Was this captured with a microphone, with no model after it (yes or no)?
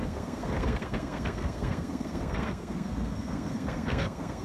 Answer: no